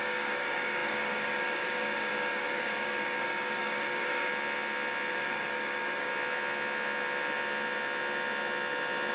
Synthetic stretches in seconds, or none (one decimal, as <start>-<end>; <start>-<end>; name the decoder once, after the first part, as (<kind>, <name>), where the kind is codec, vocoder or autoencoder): 0.0-4.3 (codec, DAC); 5.1-6.1